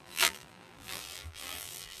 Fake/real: fake